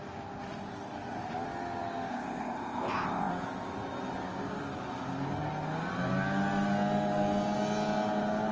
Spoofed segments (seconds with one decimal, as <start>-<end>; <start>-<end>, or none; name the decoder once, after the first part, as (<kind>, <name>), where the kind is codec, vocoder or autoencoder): 2.1-3.3 (codec, ZipCodec)